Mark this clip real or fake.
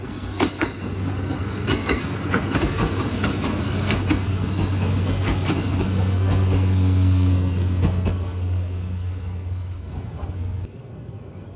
fake